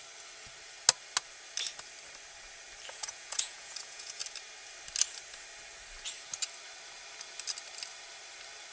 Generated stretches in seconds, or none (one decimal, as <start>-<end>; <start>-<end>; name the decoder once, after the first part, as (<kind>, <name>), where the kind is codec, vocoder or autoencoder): 2.9-4.2 (vocoder, Vocos)